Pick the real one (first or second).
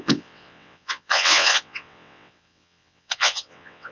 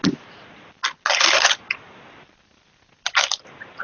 second